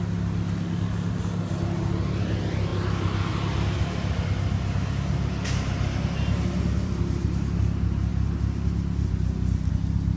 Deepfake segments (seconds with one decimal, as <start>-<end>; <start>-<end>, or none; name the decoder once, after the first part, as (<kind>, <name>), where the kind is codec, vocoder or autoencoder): none